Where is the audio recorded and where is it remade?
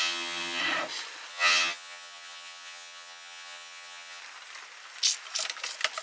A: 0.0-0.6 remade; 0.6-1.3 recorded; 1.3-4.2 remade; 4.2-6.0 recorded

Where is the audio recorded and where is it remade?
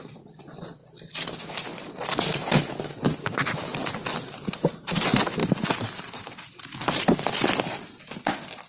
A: 0.0-8.7 recorded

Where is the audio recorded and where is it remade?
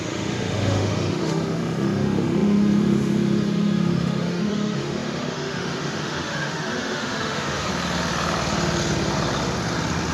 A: 0.0-7.7 remade; 7.7-10.1 recorded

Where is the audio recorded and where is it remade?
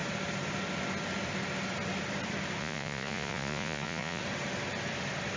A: 0.0-2.6 recorded; 2.6-4.2 remade; 4.2-5.4 recorded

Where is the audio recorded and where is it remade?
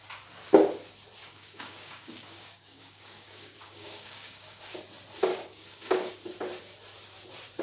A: 0.0-1.2 recorded; 1.2-4.6 remade; 4.6-5.3 recorded; 5.3-6.1 remade; 6.1-7.6 recorded